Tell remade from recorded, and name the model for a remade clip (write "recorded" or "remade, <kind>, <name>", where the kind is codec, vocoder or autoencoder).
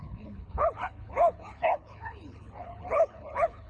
remade, codec, HILCodec